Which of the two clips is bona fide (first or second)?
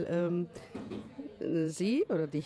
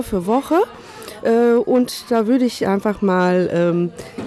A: second